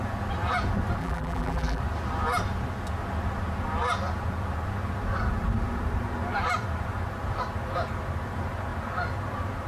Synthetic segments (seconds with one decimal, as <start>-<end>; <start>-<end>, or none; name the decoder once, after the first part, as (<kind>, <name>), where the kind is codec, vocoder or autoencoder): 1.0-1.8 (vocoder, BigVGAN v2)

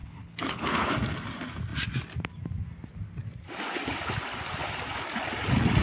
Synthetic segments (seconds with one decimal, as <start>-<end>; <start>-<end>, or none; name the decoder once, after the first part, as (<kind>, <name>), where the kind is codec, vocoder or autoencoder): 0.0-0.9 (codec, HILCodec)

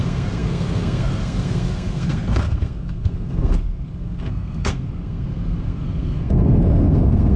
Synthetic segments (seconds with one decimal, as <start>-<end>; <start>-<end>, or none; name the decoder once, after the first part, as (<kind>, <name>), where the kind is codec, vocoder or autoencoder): 0.0-7.4 (codec, SNAC)